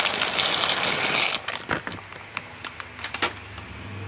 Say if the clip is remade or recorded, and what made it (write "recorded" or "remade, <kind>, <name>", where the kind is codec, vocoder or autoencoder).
recorded